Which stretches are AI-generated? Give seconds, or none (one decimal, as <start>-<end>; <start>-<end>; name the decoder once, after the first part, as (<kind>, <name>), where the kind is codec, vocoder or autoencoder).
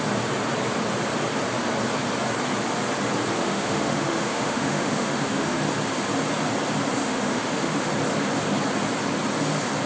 3.4-5.6 (autoencoder, DAC-VAE); 7.0-7.9